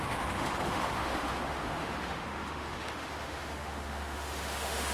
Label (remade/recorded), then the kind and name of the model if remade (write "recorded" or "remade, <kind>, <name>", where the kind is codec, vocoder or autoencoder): remade, autoencoder, DAC-VAE